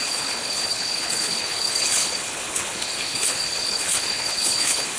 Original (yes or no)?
no